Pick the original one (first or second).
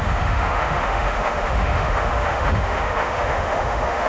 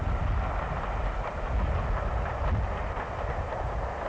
second